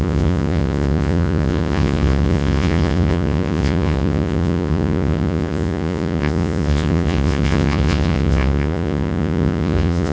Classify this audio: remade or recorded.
remade